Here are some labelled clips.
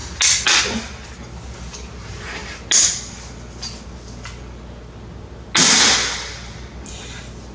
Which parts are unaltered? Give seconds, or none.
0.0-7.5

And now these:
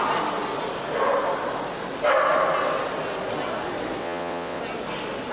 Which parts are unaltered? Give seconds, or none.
0.0-4.0; 4.6-5.3

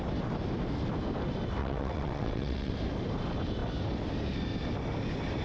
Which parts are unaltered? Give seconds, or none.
0.0-1.6; 2.7-5.4

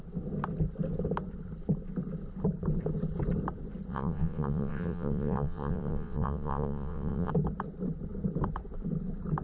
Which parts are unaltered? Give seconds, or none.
0.0-3.9; 7.3-9.4